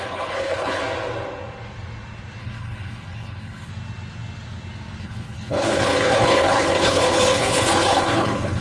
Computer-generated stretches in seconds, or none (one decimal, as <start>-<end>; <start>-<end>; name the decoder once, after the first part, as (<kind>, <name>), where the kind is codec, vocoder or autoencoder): 0.0-0.8 (codec, HILCodec); 2.4-3.7; 5.0-8.6

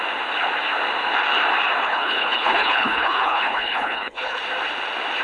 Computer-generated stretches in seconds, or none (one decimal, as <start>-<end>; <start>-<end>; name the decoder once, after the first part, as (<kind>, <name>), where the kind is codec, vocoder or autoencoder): 1.8-4.4 (codec, HILCodec)

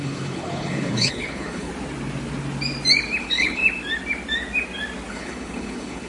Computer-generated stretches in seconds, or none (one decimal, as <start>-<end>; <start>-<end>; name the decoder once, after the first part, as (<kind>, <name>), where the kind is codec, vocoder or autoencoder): 0.0-1.7 (codec, HILCodec); 3.2-3.6; 5.1-6.1

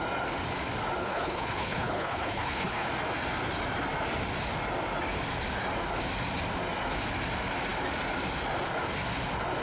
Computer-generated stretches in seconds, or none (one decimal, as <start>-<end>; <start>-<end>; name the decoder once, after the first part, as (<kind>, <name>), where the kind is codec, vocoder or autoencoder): 1.0-2.9 (codec, HILCodec)

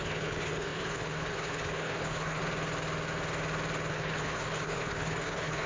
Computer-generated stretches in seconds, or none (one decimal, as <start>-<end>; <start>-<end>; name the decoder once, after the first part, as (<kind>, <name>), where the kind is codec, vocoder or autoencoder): 0.0-2.4 (codec, HILCodec); 3.9-5.7

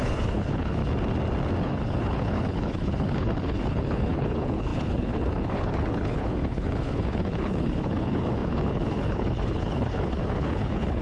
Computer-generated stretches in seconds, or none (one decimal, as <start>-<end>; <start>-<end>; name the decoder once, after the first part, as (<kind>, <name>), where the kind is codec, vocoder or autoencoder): 0.0-0.8 (codec, HILCodec); 1.6-11.0